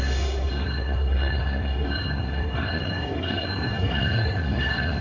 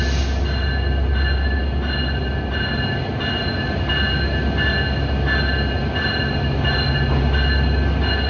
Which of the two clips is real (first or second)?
second